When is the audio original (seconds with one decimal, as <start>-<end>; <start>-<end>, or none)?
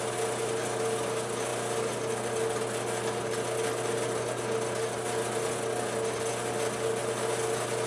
0.0-7.9